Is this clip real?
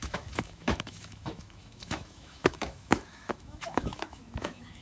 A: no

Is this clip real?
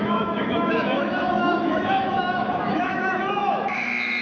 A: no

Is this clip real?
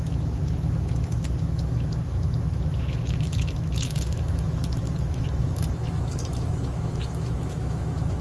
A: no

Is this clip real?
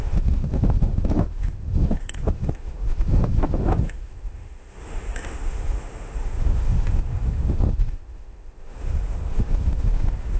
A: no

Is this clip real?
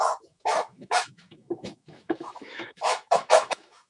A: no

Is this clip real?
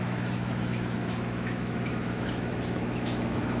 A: no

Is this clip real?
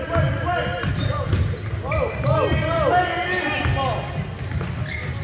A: yes